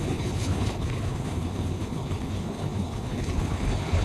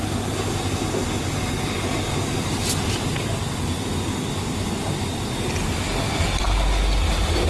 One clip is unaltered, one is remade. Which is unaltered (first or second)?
second